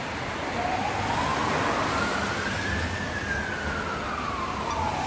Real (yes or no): yes